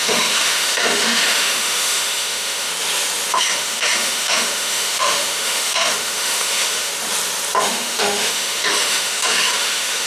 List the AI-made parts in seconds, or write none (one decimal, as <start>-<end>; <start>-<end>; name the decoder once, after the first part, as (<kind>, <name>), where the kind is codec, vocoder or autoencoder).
0.0-2.7 (autoencoder, DAC-VAE); 3.3-6.9; 7.6-10.1